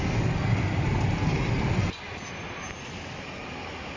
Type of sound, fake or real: real